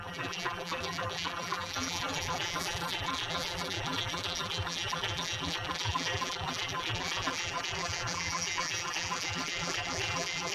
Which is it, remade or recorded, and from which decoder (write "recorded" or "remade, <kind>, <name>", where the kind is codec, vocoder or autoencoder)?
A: remade, vocoder, BigVGAN v2